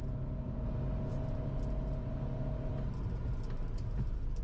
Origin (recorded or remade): recorded